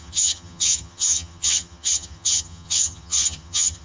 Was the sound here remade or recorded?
remade